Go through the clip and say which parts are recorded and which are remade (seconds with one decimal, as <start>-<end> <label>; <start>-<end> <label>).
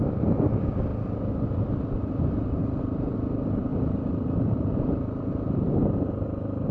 0.0-3.7 recorded; 3.7-4.7 remade; 4.7-6.7 recorded